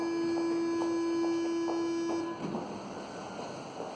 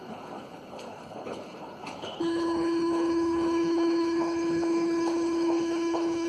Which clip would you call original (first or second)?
first